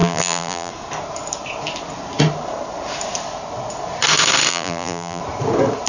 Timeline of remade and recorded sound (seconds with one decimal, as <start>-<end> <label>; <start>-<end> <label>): 0.0-0.7 remade; 0.7-4.5 recorded; 4.5-5.2 remade; 5.2-5.9 recorded